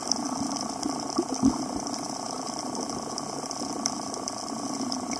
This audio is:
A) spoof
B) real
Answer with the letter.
B